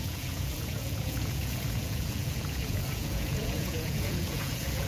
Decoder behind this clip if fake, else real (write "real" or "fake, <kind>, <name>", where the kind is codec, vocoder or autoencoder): fake, vocoder, Vocos